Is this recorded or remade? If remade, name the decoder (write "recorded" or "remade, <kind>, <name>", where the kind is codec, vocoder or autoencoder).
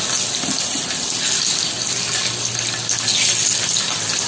recorded